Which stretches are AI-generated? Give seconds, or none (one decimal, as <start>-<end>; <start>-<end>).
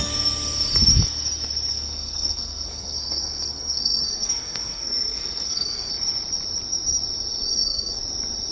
1.7-5.9; 7.5-8.0